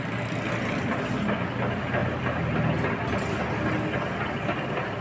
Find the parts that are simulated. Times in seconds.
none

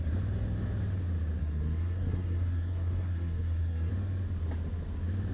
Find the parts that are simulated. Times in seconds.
1.4-3.9 (codec, SNAC)

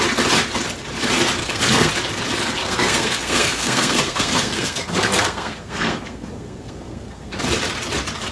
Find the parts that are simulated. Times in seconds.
1.4-1.9 (codec, SNAC); 2.6-7.3

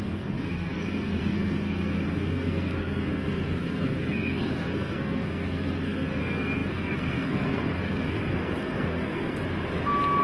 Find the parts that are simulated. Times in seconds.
0.0-9.4 (codec, SNAC)

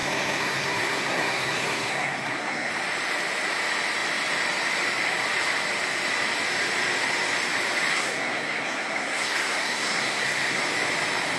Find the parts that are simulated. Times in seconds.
0.0-2.7 (codec, SNAC); 7.9-10.6

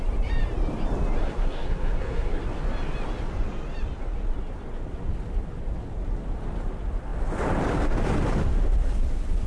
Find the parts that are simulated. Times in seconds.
1.2-2.4 (codec, SNAC)

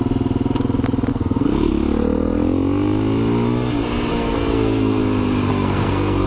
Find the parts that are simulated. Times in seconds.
1.1-1.7 (codec, SNAC); 4.1-5.0; 5.5-6.3

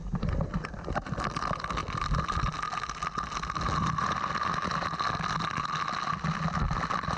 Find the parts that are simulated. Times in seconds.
none